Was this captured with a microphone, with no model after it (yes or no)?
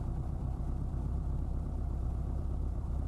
no